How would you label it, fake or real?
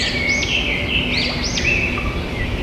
real